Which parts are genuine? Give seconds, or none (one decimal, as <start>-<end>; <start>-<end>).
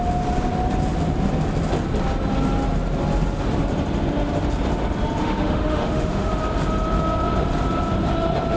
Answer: 0.0-5.2; 6.3-8.6